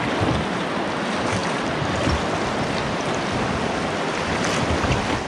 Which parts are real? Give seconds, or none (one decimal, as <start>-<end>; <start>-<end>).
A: 0.0-1.4; 4.6-5.3